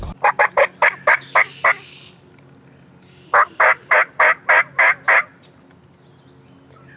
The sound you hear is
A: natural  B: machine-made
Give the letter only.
A